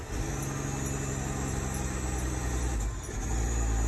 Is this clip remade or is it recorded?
recorded